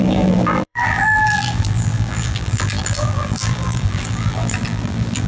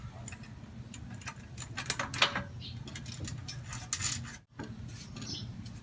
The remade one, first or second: first